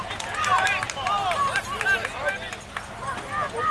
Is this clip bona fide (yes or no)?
yes